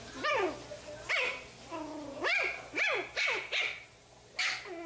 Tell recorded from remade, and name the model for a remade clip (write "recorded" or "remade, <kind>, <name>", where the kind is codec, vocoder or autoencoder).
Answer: recorded